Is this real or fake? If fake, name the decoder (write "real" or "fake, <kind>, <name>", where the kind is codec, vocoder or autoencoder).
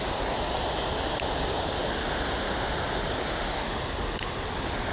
real